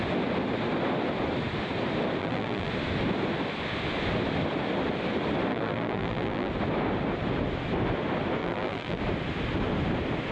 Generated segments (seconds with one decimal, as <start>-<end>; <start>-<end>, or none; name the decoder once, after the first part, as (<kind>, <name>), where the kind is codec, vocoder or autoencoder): 2.2-2.7 (vocoder, BigVGAN v2); 5.5-6.5; 8.4-9.0